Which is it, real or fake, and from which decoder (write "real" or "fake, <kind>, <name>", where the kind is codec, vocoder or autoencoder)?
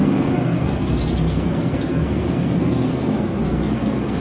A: fake, codec, SNAC